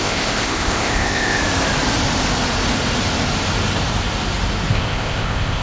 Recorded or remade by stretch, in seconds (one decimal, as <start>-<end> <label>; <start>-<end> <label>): 0.0-1.4 remade; 1.4-4.7 recorded; 4.7-5.6 remade